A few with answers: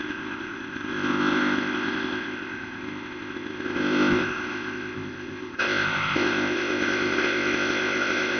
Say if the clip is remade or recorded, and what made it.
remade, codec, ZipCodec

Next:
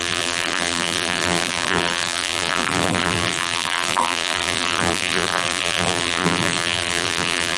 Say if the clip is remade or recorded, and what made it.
remade, vocoder, BigVGAN v2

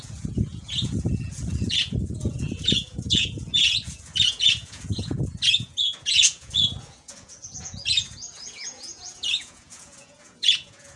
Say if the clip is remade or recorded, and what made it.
remade, vocoder, Vocos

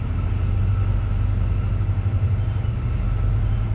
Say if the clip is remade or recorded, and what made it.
recorded